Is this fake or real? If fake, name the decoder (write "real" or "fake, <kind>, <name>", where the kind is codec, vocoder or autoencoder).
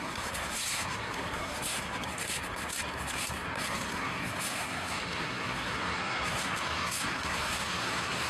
fake, codec, SNAC